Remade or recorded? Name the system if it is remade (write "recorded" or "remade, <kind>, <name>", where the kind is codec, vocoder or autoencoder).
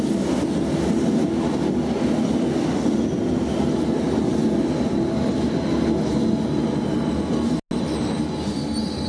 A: recorded